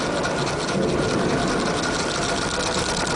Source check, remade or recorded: recorded